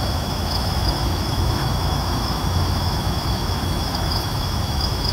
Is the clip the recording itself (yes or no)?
no